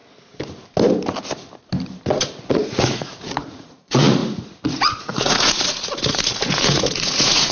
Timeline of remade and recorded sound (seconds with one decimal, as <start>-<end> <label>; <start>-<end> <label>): 0.0-2.5 recorded; 2.5-7.5 remade